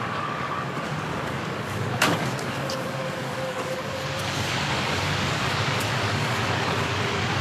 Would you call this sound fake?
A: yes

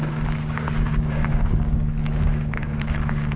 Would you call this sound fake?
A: yes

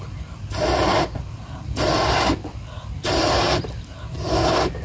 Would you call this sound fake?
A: no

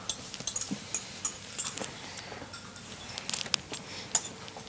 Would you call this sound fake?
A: no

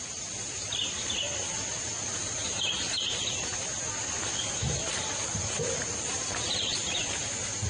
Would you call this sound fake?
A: no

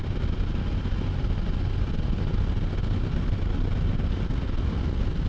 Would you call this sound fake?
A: no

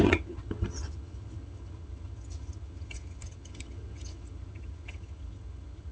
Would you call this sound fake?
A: yes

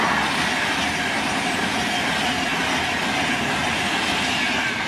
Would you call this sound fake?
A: no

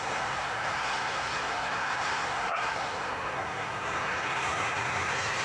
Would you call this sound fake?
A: yes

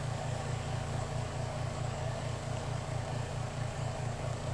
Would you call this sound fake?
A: yes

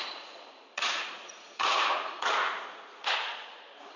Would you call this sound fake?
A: yes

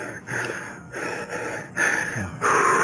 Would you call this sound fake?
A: yes